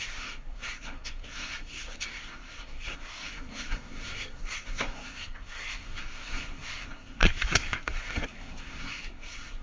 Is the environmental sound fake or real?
fake